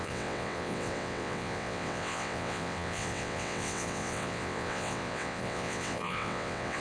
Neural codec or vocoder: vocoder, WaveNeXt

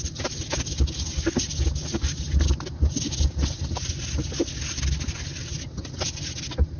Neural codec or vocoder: none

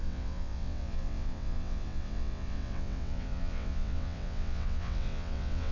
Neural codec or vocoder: vocoder, WaveNeXt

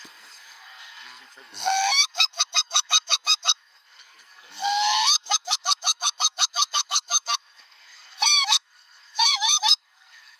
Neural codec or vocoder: codec, SNAC